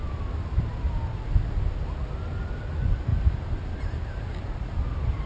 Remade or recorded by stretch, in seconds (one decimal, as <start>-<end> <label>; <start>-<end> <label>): 0.0-5.3 recorded